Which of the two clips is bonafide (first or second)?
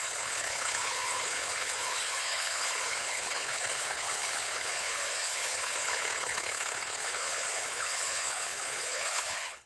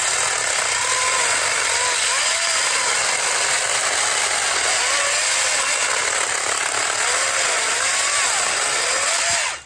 second